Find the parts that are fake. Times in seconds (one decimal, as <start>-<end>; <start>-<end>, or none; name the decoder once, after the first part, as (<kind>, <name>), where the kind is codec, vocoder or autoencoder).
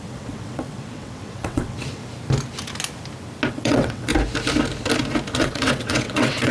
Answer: 0.0-2.0 (vocoder, WaveNeXt); 3.5-4.1; 5.4-6.5